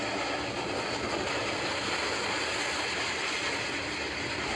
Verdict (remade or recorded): recorded